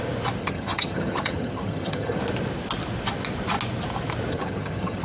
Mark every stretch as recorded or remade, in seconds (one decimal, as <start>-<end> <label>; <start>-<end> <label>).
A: 0.0-0.4 recorded; 0.4-2.2 remade; 2.2-4.3 recorded; 4.3-5.0 remade